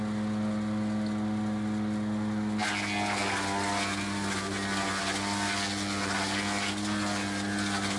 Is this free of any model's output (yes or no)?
yes